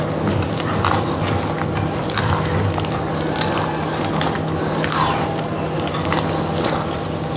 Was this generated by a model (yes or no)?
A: no